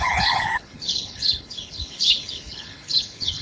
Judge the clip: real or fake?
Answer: fake